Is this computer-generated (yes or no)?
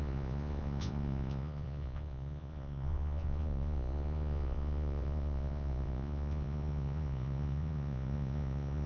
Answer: yes